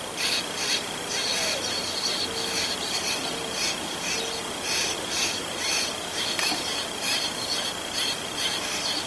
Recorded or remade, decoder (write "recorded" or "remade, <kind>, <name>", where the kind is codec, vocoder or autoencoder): recorded